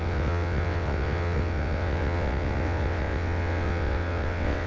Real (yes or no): no